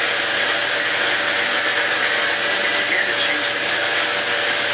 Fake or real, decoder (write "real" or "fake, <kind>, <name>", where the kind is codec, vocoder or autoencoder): real